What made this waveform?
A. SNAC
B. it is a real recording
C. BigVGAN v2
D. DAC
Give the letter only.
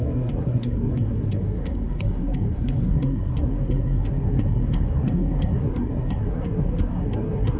A